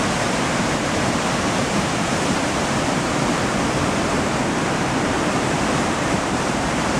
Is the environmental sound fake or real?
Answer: fake